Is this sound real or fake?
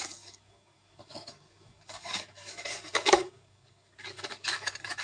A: fake